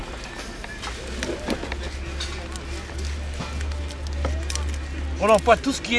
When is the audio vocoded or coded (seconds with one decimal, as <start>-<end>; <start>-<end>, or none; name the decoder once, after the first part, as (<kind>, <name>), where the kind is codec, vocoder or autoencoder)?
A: none